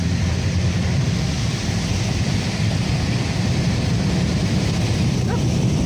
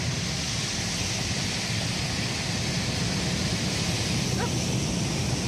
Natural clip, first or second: second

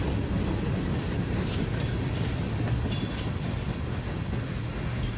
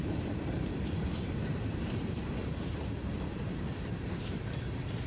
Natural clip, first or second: first